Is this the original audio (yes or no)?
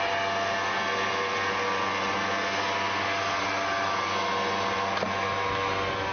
yes